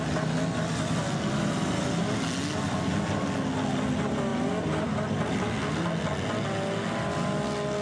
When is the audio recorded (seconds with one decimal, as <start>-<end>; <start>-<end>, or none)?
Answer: 0.0-7.8

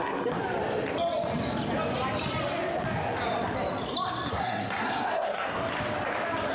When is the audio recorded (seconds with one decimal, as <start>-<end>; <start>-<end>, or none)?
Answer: 0.4-4.3; 5.7-6.5

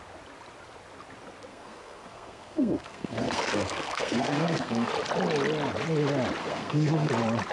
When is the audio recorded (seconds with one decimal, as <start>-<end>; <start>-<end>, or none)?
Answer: 0.0-1.5; 4.9-6.4; 7.1-7.5

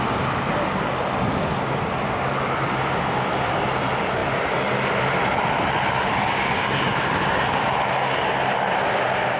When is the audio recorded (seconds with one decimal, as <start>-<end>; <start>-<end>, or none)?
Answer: 0.0-9.4

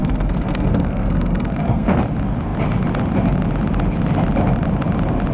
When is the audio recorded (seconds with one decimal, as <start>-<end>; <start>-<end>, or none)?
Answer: 2.0-5.3